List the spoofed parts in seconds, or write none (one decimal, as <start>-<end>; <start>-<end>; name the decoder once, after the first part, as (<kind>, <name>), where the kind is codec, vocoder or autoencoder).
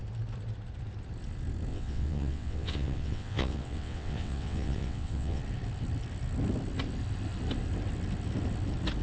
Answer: 1.7-5.4 (vocoder, WaveNeXt)